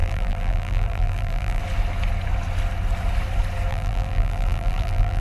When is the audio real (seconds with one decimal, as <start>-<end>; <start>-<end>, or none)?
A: 1.6-3.7